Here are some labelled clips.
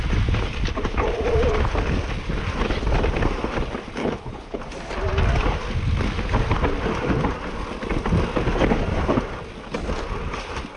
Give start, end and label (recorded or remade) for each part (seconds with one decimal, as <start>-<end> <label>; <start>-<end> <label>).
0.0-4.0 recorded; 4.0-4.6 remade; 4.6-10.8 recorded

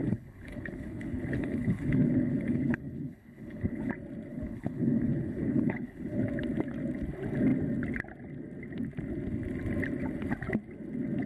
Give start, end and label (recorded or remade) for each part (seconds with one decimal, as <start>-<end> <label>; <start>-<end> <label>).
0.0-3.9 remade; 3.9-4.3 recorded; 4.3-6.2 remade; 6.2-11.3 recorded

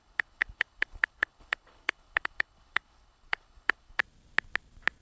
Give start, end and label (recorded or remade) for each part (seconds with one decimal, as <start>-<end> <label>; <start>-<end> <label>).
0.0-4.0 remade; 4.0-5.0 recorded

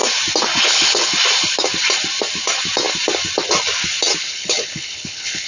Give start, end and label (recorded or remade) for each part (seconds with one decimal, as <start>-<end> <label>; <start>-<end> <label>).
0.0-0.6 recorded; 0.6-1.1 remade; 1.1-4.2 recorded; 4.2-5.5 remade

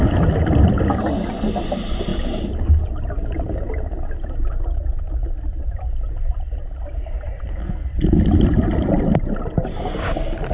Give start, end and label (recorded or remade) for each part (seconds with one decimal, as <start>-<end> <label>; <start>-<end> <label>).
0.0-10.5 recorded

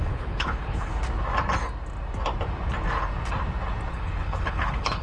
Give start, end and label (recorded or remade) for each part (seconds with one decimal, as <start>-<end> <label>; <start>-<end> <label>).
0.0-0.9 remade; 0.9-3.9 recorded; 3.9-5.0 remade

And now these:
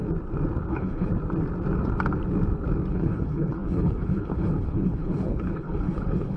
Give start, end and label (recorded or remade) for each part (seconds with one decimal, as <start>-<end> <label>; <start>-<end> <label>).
0.0-0.7 recorded; 0.7-1.1 remade; 1.1-2.9 recorded; 2.9-6.4 remade

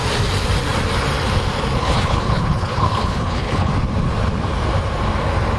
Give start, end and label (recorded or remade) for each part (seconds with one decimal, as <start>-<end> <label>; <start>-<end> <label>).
0.0-1.8 recorded; 1.8-3.7 remade; 3.7-5.6 recorded